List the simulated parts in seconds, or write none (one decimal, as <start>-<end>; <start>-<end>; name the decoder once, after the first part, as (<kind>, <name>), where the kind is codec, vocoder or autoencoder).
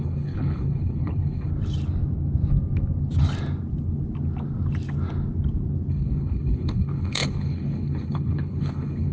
0.0-1.5 (codec, HILCodec); 5.9-9.1